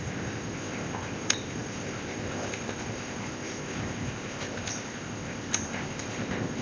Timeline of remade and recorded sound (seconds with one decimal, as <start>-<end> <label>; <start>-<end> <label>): 0.0-6.6 remade